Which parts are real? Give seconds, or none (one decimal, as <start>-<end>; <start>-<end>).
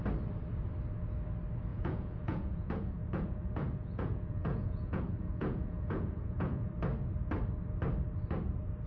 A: 0.0-1.7; 6.7-8.9